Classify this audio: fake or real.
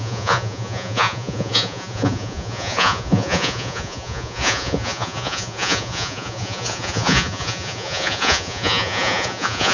fake